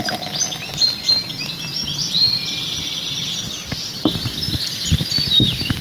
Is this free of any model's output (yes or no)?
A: yes